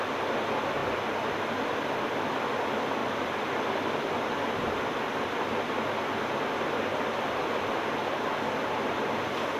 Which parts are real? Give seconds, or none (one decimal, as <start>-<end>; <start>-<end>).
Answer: 0.0-3.0; 6.0-9.6